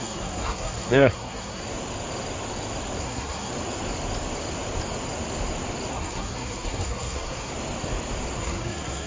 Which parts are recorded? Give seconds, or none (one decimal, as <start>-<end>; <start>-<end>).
1.6-3.0; 3.5-5.9; 7.5-8.4